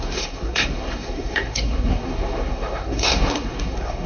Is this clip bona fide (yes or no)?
no